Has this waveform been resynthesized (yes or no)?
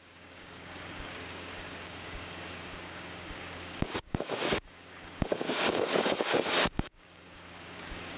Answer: yes